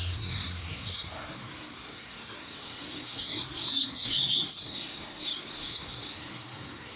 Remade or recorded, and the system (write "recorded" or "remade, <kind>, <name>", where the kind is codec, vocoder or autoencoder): remade, codec, SNAC